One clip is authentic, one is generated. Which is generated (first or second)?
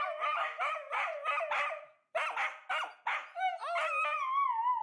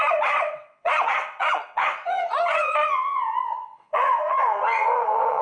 second